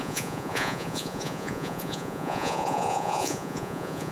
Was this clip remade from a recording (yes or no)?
yes